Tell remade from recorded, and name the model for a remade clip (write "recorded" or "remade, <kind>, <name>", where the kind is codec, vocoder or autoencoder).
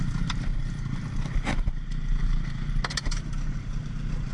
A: recorded